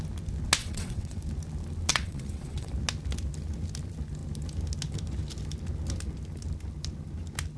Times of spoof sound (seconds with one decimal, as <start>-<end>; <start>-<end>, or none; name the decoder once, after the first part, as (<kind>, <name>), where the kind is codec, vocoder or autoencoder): 0.6-1.2 (vocoder, WaveNeXt); 1.9-2.7